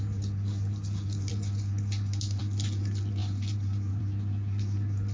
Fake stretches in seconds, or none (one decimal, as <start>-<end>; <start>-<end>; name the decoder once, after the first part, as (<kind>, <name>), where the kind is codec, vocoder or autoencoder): 3.2-4.0 (vocoder, BigVGAN v2)